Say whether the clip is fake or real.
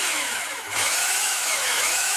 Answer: fake